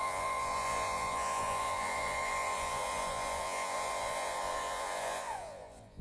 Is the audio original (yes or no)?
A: no